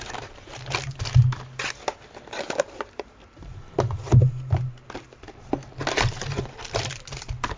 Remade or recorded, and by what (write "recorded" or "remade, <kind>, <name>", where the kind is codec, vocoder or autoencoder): recorded